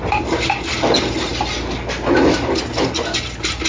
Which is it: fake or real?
real